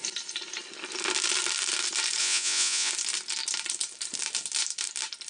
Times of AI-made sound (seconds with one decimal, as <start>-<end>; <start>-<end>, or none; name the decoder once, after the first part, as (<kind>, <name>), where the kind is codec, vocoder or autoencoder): 2.2-2.9 (vocoder, Vocos)